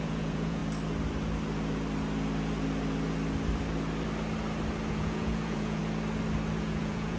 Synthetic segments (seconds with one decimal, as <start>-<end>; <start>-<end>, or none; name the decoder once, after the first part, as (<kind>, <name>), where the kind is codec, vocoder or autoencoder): 0.0-0.6 (vocoder, Vocos); 4.9-5.8; 6.6-7.2

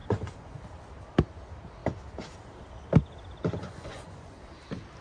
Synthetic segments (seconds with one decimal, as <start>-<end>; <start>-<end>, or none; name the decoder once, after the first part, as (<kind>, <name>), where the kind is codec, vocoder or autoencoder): 0.0-0.6 (vocoder, Vocos); 3.6-4.4

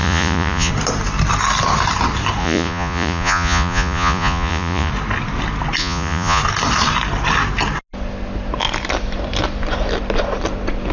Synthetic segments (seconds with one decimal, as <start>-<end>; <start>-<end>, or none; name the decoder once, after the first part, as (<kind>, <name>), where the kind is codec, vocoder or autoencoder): 0.0-0.7 (vocoder, Vocos); 2.4-4.9; 5.8-6.4

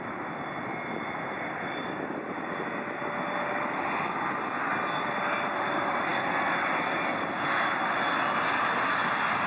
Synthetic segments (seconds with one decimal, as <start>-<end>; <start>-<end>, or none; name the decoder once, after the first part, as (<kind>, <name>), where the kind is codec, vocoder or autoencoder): none

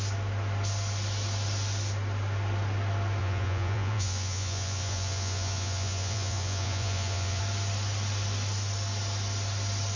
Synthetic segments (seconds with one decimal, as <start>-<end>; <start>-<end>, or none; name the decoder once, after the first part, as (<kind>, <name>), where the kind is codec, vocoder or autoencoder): 3.2-7.4 (vocoder, Vocos)